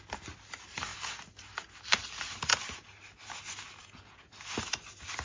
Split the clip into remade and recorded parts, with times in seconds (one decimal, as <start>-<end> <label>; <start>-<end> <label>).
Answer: 0.0-3.8 recorded; 3.8-4.3 remade; 4.3-5.2 recorded